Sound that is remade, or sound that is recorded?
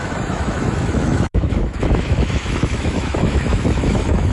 remade